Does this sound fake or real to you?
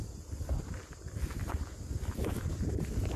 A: real